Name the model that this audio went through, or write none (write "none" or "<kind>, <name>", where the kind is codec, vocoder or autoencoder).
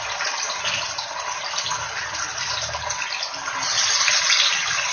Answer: none